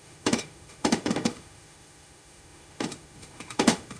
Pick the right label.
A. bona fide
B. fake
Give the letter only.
B